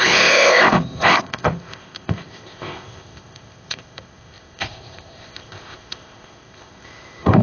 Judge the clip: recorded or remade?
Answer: remade